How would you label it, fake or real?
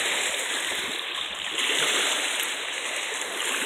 real